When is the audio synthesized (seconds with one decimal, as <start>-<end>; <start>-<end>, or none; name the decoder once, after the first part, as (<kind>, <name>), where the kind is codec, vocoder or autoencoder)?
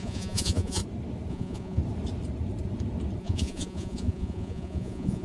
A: 0.0-0.8 (vocoder, Vocos); 1.3-1.8; 3.2-5.2